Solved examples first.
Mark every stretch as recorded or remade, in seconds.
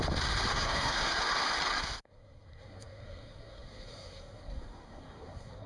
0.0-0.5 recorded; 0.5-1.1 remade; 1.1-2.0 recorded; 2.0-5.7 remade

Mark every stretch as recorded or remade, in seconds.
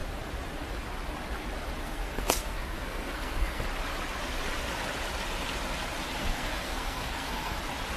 0.0-1.8 recorded; 1.8-3.6 remade; 3.6-6.2 recorded; 6.2-7.6 remade; 7.6-8.0 recorded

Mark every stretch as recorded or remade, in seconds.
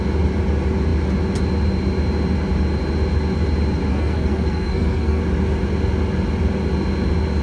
0.0-3.9 recorded; 3.9-5.2 remade; 5.2-7.4 recorded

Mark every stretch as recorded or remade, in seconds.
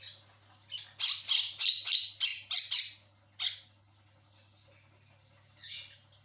0.0-6.2 recorded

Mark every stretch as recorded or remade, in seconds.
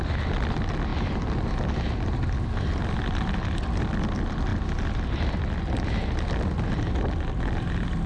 0.0-8.1 recorded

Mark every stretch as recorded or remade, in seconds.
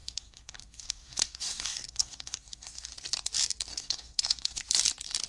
0.0-2.9 remade; 2.9-3.7 recorded; 3.7-4.6 remade; 4.6-5.3 recorded